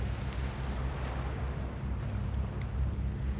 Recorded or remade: recorded